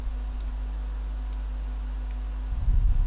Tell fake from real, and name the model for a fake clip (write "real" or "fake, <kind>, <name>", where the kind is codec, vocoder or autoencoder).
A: real